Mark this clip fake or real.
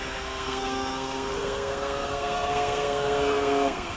fake